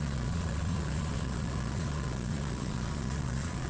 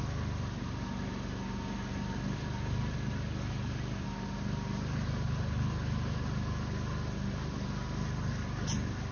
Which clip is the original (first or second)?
second